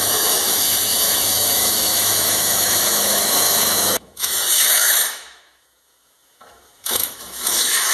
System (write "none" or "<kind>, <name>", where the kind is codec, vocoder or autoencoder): autoencoder, DAC-VAE